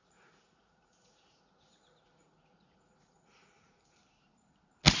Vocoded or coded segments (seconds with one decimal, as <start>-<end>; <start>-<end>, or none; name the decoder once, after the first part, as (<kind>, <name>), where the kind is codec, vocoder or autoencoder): 0.0-4.0 (vocoder, Vocos)